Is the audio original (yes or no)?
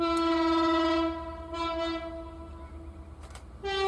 yes